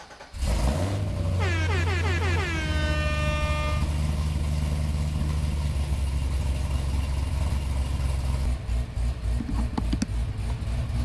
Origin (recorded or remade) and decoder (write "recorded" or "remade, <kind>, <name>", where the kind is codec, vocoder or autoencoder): recorded